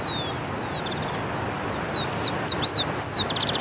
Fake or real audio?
real